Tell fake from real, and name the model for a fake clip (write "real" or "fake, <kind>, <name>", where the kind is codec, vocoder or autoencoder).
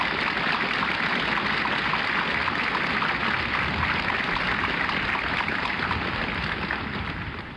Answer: real